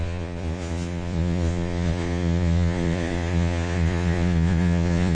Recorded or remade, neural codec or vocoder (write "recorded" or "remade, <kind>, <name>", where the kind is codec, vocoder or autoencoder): remade, vocoder, Vocos